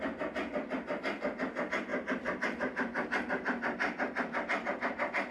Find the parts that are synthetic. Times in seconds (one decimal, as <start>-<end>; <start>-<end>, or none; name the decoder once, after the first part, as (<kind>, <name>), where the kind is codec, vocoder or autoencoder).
1.9-5.3 (vocoder, BigVGAN v2)